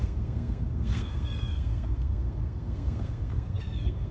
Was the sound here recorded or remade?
remade